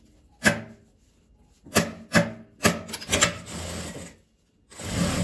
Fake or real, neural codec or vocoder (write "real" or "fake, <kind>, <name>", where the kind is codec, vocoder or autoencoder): real